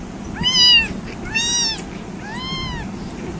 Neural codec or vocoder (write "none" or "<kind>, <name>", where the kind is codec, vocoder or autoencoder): none